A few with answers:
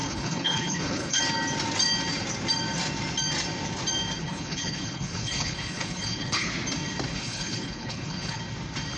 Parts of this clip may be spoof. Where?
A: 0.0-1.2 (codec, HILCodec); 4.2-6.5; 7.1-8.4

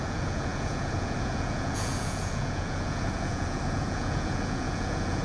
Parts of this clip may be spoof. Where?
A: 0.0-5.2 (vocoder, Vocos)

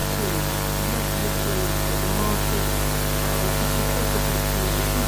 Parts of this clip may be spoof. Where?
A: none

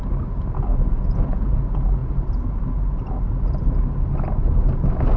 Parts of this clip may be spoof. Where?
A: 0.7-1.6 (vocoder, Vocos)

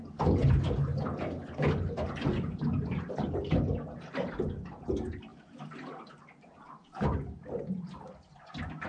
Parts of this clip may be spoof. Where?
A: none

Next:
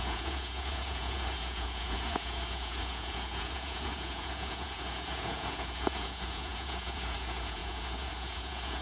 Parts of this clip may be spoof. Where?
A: 0.0-8.8 (vocoder, Vocos)

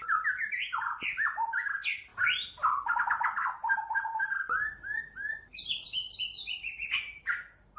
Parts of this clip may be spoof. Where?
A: none